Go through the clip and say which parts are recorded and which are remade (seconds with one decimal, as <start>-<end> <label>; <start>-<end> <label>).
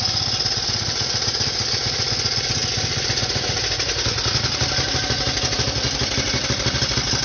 0.0-7.2 recorded